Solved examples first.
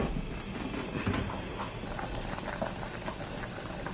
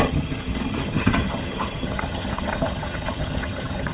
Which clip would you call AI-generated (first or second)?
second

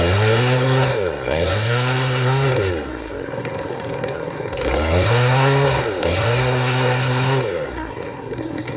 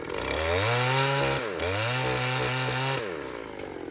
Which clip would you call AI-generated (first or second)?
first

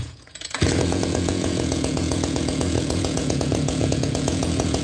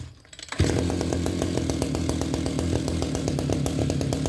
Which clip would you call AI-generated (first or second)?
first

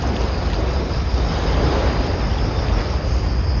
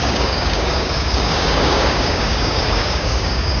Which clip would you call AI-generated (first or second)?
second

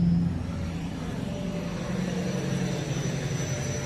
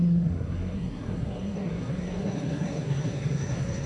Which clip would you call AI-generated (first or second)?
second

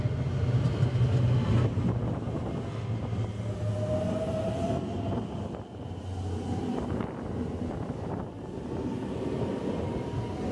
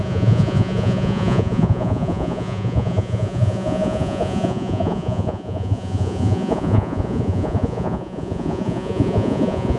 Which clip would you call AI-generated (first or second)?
second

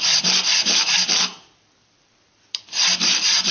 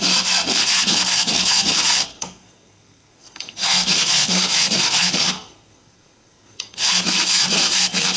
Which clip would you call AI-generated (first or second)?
second